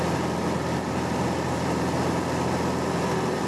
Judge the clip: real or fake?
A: real